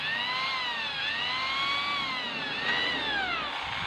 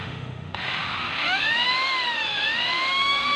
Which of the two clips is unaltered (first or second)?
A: first